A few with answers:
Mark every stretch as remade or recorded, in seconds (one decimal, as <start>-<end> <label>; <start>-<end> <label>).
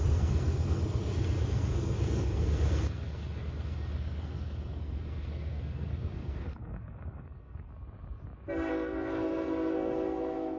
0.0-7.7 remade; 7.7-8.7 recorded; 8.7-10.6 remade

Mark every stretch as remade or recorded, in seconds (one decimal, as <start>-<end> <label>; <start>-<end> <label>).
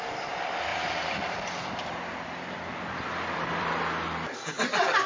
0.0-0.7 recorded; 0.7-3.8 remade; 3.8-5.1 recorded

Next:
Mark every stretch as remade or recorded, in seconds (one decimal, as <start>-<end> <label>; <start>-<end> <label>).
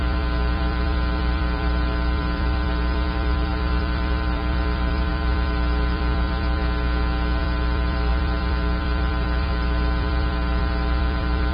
0.0-6.6 remade; 6.6-7.4 recorded; 7.4-11.5 remade